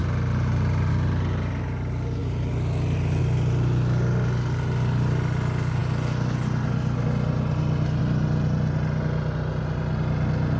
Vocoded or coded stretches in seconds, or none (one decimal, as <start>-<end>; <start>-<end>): none